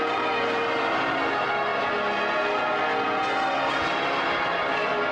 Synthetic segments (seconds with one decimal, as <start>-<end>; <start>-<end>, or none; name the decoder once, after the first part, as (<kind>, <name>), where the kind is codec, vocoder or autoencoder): 0.0-1.7 (vocoder, BigVGAN v2); 3.7-5.1